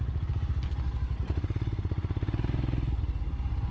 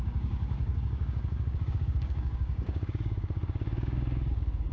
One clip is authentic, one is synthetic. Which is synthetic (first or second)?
second